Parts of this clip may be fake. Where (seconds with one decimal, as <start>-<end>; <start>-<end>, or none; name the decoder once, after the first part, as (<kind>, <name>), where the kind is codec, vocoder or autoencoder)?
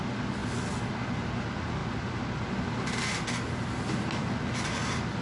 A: none